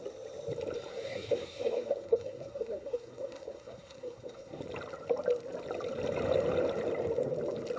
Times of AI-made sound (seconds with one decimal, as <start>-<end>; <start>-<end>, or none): 0.9-4.6